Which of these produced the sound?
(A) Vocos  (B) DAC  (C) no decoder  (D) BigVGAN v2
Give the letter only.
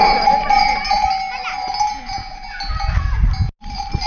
C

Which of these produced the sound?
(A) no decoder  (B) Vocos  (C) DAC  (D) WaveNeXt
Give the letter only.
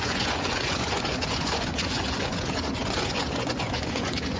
B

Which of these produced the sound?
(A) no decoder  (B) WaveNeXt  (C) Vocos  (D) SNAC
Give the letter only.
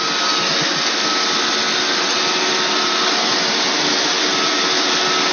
A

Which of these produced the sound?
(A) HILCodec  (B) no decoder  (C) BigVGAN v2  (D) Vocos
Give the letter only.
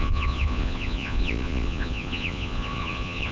D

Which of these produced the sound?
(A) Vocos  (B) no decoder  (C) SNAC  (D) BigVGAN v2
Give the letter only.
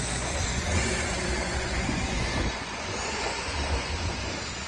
A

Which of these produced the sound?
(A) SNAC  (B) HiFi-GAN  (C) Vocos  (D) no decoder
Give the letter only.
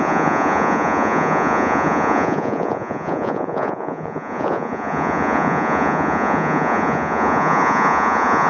C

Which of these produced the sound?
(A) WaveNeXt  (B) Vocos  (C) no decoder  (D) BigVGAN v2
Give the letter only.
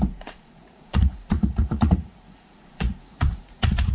B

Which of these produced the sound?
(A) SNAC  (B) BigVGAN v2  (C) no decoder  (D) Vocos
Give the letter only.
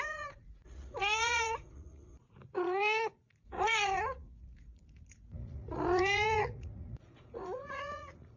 D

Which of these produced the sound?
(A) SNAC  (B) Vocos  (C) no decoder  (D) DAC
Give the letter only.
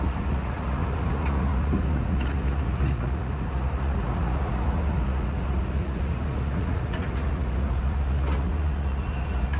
B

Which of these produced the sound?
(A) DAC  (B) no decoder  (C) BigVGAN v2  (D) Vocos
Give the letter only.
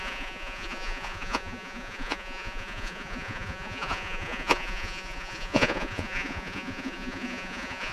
D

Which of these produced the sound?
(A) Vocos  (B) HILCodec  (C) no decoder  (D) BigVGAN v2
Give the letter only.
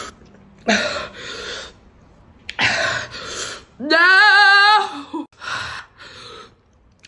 C